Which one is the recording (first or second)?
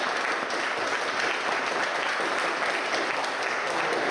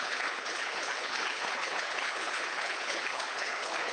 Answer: first